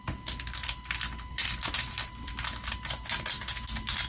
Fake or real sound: real